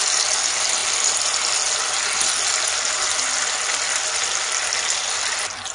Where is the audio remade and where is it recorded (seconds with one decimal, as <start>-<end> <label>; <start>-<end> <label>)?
0.0-5.7 recorded